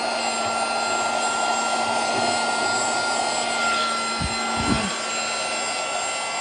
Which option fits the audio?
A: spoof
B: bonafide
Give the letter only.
B